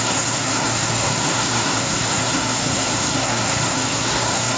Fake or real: fake